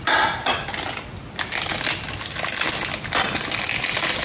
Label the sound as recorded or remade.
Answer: recorded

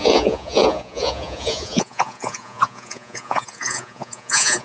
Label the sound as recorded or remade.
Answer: remade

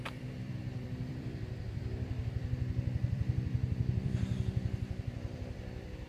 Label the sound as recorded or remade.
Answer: remade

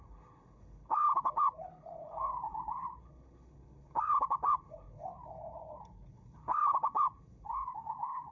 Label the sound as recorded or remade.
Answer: remade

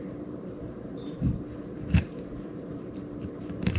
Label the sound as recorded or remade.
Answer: remade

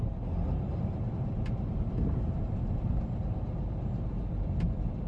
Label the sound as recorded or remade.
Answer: recorded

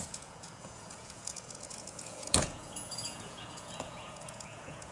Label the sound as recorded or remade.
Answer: remade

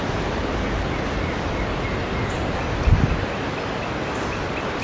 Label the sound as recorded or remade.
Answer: recorded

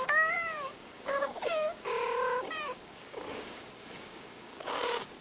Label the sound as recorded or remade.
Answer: remade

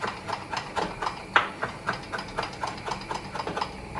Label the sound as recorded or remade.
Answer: recorded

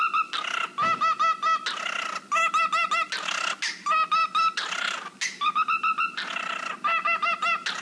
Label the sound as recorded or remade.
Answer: recorded